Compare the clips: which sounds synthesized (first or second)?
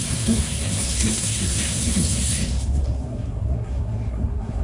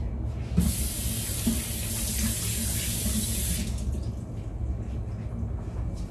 first